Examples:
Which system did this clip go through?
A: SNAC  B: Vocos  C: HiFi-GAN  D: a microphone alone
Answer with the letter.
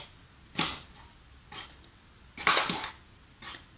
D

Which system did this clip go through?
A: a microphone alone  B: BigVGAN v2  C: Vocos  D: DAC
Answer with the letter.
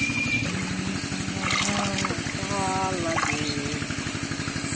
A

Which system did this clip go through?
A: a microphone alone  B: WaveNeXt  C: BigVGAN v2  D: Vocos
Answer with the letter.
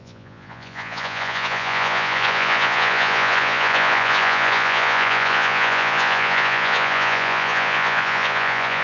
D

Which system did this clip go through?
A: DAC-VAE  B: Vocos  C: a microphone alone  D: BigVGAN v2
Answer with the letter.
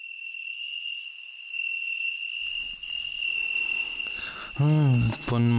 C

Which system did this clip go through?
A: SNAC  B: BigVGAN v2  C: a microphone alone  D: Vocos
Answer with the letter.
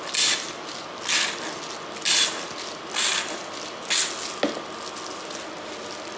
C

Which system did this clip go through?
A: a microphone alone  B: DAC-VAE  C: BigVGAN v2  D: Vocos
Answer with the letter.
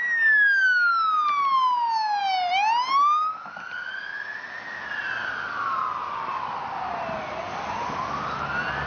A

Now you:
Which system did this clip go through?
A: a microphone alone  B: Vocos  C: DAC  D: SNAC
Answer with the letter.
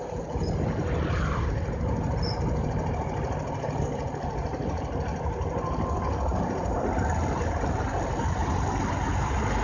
A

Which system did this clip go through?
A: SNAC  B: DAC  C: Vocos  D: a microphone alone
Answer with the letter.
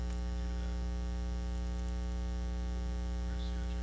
D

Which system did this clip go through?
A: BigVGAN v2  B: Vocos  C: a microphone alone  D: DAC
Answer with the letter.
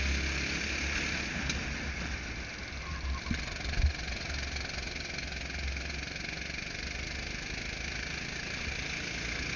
C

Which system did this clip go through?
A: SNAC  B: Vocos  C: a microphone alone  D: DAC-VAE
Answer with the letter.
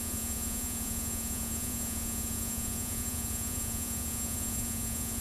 B